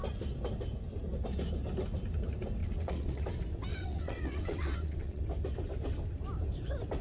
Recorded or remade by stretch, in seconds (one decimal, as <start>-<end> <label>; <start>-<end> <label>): 0.0-2.6 recorded; 2.6-3.2 remade; 3.2-3.7 recorded; 3.7-5.2 remade; 5.2-7.0 recorded

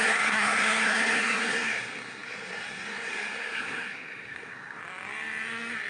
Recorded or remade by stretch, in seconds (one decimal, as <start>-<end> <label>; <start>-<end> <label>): 0.0-4.8 remade; 4.8-5.9 recorded

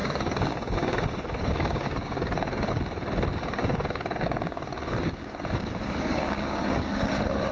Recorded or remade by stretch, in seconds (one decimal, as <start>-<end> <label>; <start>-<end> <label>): 0.0-2.7 remade; 2.7-3.6 recorded; 3.6-7.1 remade; 7.1-7.5 recorded